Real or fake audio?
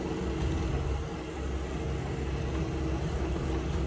real